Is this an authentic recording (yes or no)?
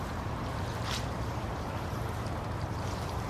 no